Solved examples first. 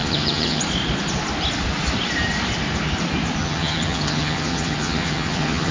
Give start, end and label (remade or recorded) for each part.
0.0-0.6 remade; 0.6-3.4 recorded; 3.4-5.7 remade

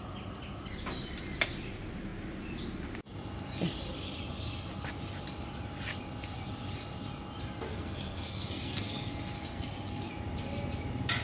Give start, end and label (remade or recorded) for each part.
0.0-7.7 recorded; 7.7-10.1 remade; 10.1-11.2 recorded

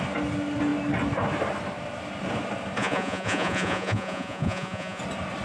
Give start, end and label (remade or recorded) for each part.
0.0-2.8 recorded; 2.8-5.0 remade; 5.0-5.4 recorded

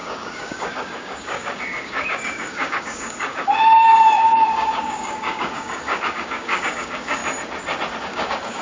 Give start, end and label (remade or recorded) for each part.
0.0-7.2 remade; 7.2-8.0 recorded; 8.0-8.6 remade

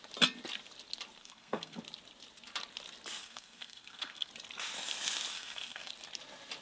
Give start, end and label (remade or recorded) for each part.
0.0-1.2 recorded; 1.2-1.8 remade; 1.8-3.2 recorded; 3.2-4.3 remade; 4.3-5.3 recorded; 5.3-5.9 remade; 5.9-6.6 recorded

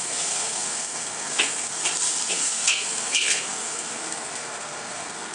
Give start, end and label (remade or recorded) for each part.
0.0-1.8 remade; 1.8-2.3 recorded; 2.3-5.3 remade

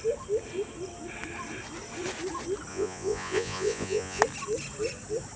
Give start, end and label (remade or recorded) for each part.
0.0-2.7 recorded; 2.7-4.2 remade; 4.2-5.4 recorded